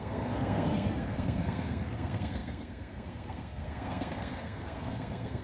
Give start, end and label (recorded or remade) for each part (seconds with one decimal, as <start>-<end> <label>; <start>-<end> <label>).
0.0-5.4 remade